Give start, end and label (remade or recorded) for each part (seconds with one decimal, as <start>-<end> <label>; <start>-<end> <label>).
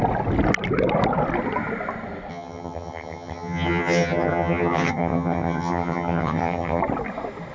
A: 0.0-2.3 recorded; 2.3-6.8 remade; 6.8-7.5 recorded